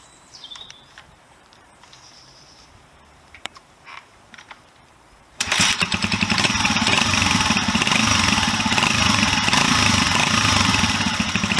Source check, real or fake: fake